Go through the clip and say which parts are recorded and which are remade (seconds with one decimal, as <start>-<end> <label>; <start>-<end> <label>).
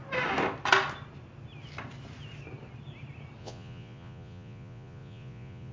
0.0-3.4 recorded; 3.4-5.7 remade